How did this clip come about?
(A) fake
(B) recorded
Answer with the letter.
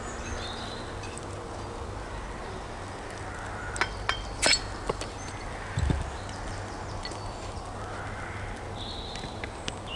B